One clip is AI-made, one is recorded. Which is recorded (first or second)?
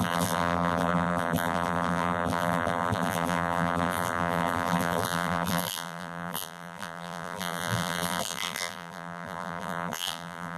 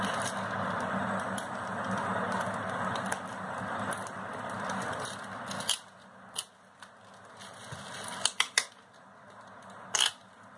second